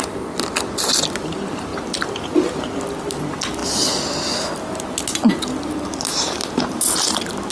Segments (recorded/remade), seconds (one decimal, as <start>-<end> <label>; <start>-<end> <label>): 0.0-7.5 recorded